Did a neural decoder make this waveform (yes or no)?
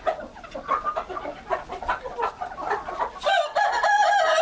no